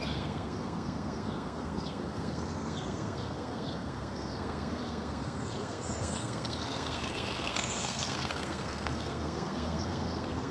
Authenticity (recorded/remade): remade